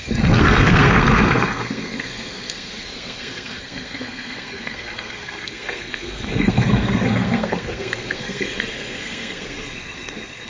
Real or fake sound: fake